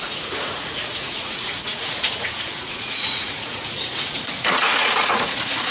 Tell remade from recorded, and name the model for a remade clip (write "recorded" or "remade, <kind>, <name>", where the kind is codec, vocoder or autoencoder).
remade, vocoder, Vocos